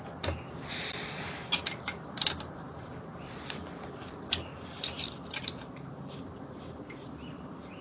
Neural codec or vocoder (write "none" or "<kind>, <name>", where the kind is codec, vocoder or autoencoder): none